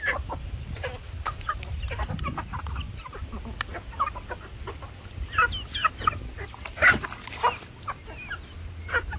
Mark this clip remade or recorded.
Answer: recorded